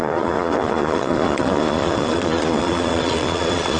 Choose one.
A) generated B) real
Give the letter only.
A